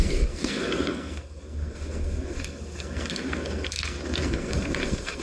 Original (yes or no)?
no